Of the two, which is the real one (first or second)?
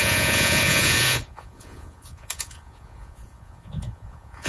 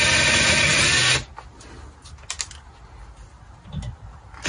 second